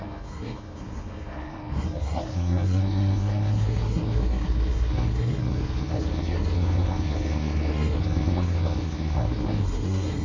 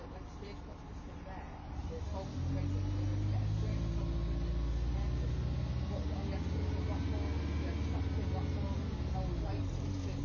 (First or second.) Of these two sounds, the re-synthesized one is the first